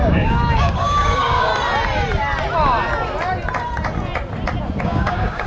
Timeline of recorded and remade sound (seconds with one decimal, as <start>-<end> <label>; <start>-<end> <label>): 0.0-1.5 remade; 1.5-4.8 recorded; 4.8-5.5 remade